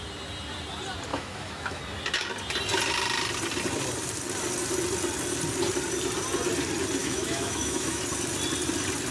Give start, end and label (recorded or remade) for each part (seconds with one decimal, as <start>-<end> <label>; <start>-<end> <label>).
0.0-1.1 recorded; 1.1-1.8 remade; 1.8-7.0 recorded; 7.0-8.0 remade; 8.0-9.1 recorded